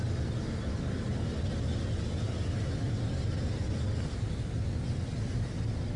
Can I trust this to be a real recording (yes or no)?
yes